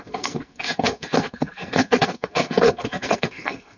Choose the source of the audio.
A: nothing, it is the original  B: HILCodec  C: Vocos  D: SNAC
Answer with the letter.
D